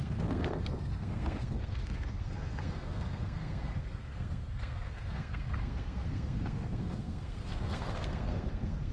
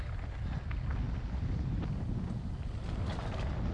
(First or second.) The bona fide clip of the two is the second